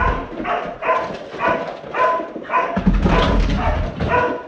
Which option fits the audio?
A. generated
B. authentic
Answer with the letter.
B